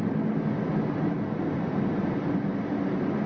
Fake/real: real